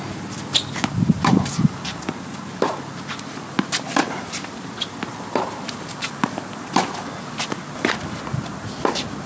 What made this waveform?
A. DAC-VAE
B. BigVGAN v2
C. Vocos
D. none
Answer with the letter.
D